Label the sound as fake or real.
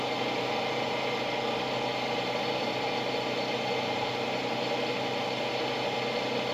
real